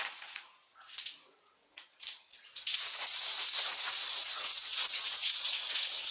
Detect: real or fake fake